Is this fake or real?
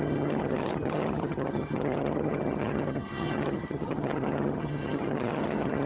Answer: fake